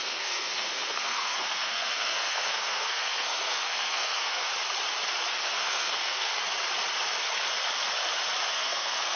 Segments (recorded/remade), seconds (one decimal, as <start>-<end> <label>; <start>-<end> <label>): 0.0-4.5 remade; 4.5-5.4 recorded; 5.4-6.3 remade; 6.3-8.5 recorded; 8.5-9.2 remade